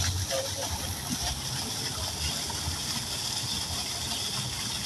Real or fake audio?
real